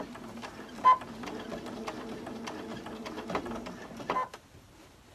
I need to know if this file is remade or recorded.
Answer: recorded